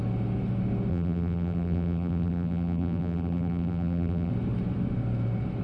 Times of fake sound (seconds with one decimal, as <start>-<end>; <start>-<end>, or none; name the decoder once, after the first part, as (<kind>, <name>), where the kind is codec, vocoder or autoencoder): 0.9-4.3 (vocoder, BigVGAN v2)